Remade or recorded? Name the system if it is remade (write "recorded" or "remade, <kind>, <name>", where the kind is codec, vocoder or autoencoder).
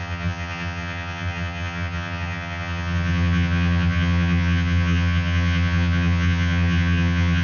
remade, vocoder, HiFi-GAN